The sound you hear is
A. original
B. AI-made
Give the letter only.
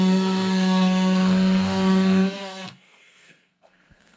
B